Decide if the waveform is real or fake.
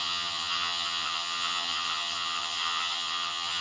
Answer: fake